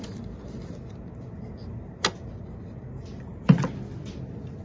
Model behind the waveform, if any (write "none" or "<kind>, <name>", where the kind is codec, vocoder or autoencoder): none